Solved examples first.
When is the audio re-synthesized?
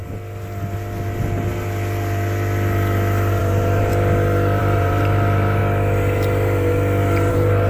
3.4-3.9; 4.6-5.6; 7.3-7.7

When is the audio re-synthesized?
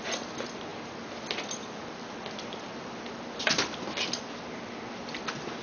0.7-2.1; 2.7-4.2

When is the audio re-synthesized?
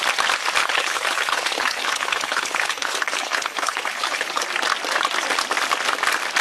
0.6-4.4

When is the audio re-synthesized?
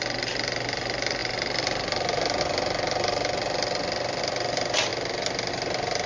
none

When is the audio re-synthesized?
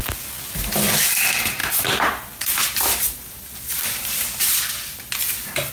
1.6-5.0